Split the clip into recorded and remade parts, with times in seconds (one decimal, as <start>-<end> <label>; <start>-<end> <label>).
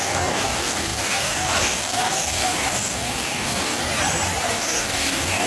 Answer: 0.0-3.8 remade; 3.8-4.5 recorded; 4.5-5.5 remade